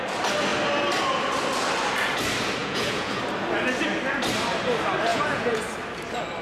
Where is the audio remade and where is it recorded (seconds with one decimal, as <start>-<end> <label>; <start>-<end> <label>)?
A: 0.0-2.6 recorded; 2.6-3.2 remade; 3.2-5.1 recorded; 5.1-5.6 remade; 5.6-6.4 recorded